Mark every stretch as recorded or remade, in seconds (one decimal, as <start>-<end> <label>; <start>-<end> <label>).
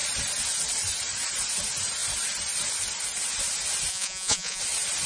0.0-3.9 recorded; 3.9-4.6 remade; 4.6-5.1 recorded